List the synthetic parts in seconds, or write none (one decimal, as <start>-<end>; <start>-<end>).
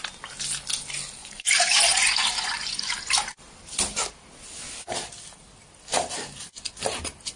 1.2-2.9